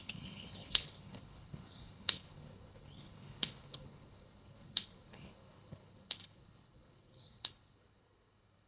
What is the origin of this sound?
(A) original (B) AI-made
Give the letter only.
B